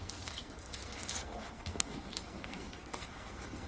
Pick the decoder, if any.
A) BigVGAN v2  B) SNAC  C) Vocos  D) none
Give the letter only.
B